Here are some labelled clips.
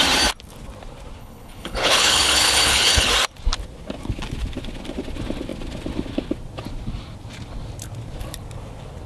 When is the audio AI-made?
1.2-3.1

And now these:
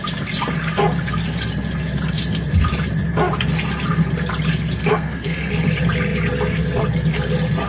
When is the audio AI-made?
4.9-5.5

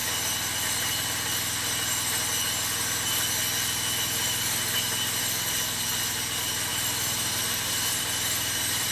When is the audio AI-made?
6.7-8.9